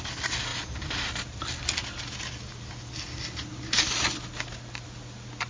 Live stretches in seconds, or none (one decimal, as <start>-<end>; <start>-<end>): 0.0-5.5